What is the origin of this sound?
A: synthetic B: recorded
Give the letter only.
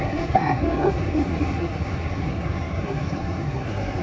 A